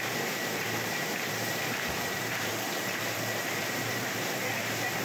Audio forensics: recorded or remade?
remade